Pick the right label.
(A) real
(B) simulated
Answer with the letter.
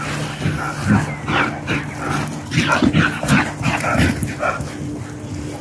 A